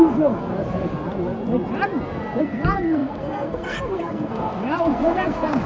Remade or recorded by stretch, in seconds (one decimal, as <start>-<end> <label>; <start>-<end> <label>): 0.0-0.5 remade; 0.5-2.4 recorded; 2.4-5.7 remade